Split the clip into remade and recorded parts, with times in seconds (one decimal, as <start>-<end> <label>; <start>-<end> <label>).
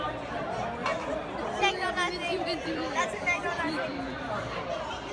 0.0-2.3 recorded; 2.3-4.6 remade; 4.6-5.1 recorded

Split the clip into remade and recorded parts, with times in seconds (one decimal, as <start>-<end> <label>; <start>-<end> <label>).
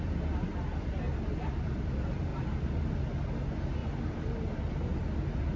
0.0-2.3 recorded; 2.3-3.1 remade; 3.1-3.8 recorded; 3.8-5.0 remade; 5.0-5.6 recorded